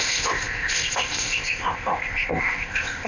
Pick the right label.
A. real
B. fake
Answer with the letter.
B